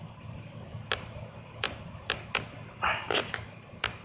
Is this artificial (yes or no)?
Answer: no